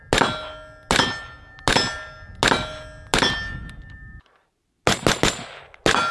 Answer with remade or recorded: recorded